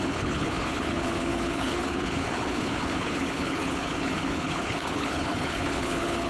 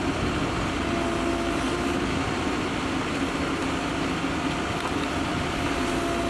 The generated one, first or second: first